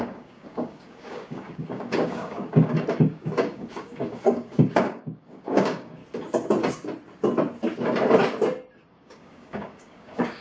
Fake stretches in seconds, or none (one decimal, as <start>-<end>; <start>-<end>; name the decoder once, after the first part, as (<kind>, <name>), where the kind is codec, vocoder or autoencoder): 0.0-6.0 (codec, DAC); 8.9-10.4